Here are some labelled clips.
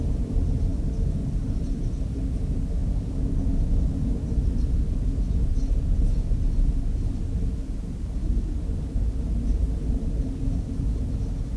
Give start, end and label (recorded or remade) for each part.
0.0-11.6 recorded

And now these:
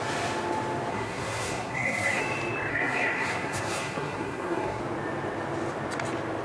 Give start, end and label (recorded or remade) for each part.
0.0-0.9 recorded; 0.9-2.2 remade; 2.2-2.7 recorded; 2.7-4.8 remade; 4.8-6.4 recorded

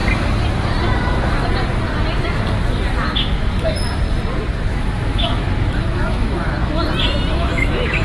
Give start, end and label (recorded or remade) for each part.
0.0-4.7 recorded; 4.7-6.7 remade; 6.7-7.3 recorded; 7.3-8.0 remade

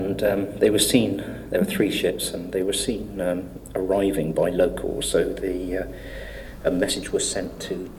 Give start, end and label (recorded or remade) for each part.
0.0-4.9 recorded; 4.9-6.9 remade; 6.9-8.0 recorded

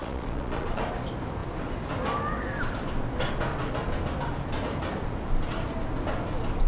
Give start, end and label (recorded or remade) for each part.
0.0-0.8 remade; 0.8-6.7 recorded